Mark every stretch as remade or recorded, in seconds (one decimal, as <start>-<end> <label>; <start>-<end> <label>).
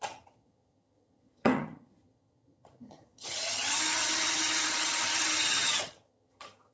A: 0.0-6.7 remade